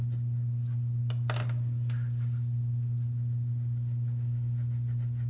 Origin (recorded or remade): recorded